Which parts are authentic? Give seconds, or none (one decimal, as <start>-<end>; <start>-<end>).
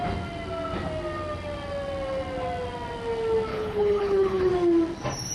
0.0-3.5; 4.5-5.3